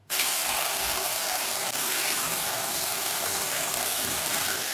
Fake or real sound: fake